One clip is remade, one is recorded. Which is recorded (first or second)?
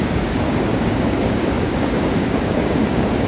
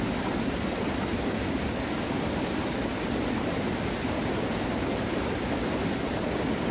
second